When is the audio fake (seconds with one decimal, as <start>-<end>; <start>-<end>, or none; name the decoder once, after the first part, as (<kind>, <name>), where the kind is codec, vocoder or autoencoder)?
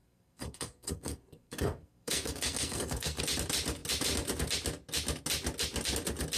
0.0-3.2 (codec, SNAC)